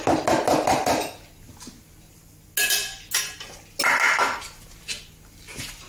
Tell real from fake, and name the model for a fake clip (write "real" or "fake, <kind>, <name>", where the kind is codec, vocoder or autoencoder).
real